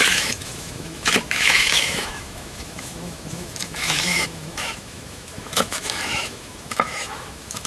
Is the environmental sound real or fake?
fake